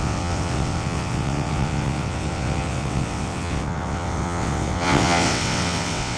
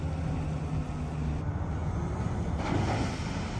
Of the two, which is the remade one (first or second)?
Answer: first